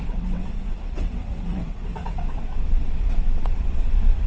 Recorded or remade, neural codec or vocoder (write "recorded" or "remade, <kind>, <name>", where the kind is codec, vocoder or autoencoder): remade, vocoder, WaveNeXt